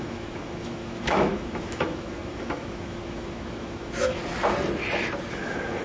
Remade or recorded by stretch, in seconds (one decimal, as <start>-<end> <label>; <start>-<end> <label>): 0.0-4.2 remade; 4.2-5.3 recorded; 5.3-5.8 remade